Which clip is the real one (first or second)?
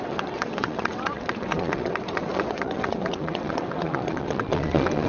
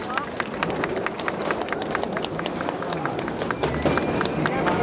second